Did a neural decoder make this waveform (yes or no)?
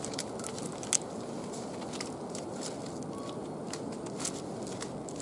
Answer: no